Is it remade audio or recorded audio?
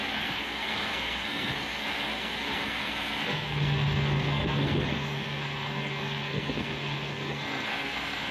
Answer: remade